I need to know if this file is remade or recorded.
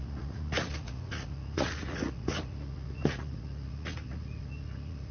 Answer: remade